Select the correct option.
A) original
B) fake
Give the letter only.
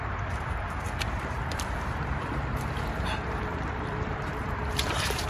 B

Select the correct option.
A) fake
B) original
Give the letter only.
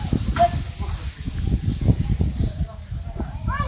B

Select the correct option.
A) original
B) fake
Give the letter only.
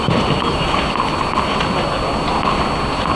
A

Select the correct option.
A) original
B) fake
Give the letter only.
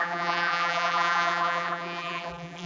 B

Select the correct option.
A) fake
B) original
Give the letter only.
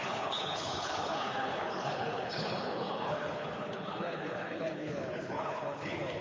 A